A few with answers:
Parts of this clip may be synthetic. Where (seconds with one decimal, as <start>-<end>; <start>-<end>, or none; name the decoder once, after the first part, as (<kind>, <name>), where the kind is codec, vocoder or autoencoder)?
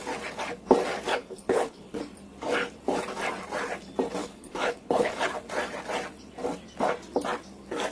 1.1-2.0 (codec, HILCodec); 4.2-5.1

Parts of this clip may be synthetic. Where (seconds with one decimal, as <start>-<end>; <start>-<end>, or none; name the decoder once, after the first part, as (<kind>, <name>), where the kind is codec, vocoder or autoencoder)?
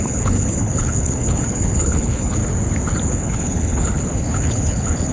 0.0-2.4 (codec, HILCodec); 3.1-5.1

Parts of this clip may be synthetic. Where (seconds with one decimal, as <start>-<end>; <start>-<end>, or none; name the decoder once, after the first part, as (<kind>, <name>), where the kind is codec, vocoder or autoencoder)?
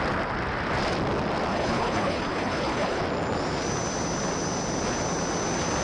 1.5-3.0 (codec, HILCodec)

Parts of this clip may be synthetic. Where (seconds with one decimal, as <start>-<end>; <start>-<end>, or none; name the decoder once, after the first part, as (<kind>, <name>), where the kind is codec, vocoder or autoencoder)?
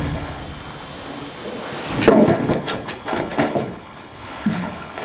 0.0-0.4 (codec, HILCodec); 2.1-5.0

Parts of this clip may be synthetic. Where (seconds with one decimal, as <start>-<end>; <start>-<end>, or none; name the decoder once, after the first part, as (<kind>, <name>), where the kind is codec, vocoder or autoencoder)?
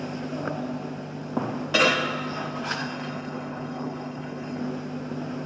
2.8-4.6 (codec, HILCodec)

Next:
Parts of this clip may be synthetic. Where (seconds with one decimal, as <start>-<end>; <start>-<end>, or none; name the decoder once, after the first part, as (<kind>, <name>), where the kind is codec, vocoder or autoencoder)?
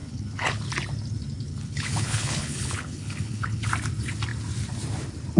0.0-0.7 (codec, HILCodec); 1.5-3.7